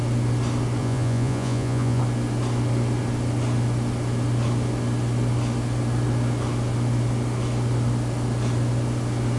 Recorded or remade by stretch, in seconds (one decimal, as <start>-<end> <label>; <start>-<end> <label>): 0.0-0.8 recorded; 0.8-2.0 remade; 2.0-9.4 recorded